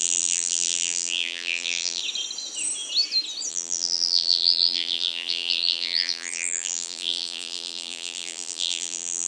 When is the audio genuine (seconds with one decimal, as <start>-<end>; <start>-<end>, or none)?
2.0-3.5